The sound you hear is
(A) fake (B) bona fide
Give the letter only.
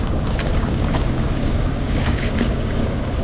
A